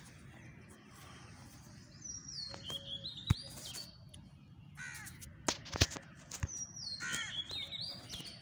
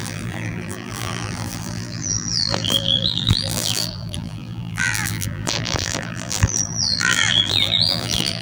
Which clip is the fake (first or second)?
second